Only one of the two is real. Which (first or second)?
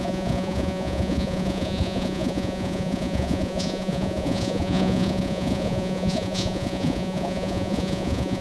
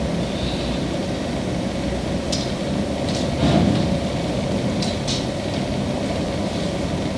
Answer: second